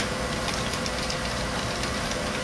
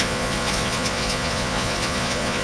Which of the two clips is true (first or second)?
first